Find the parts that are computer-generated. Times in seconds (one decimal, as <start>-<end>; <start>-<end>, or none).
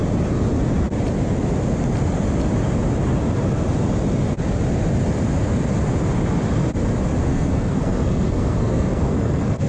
7.3-9.7